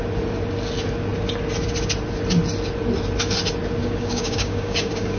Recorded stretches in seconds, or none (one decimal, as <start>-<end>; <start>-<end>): 0.0-3.8